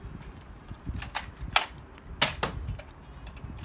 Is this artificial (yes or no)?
no